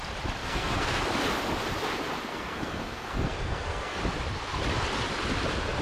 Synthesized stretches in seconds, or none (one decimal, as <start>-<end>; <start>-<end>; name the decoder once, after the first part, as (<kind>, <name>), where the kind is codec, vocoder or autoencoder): 0.4-1.0 (codec, SNAC); 2.3-4.0

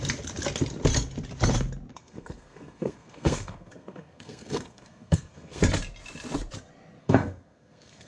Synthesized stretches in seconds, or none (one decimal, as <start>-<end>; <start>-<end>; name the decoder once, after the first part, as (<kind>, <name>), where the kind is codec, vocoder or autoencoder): 1.9-5.6 (codec, SNAC); 7.0-8.1

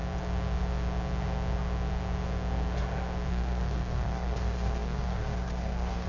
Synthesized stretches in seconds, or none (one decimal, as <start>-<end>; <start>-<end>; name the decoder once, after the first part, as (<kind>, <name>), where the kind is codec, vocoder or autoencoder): 3.3-6.1 (codec, SNAC)